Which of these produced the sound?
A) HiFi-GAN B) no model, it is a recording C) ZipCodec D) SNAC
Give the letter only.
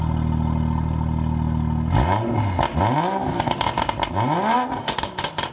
B